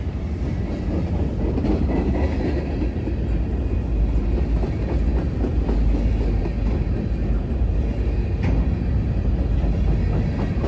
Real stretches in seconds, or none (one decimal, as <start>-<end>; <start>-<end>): 0.0-10.7